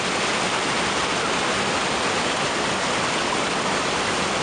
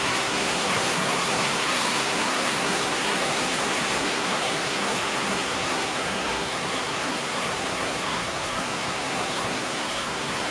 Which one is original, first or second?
first